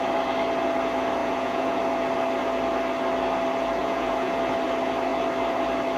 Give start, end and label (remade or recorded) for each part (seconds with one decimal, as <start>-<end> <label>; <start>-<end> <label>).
0.0-1.2 recorded; 1.2-1.8 remade; 1.8-3.8 recorded; 3.8-4.4 remade; 4.4-6.0 recorded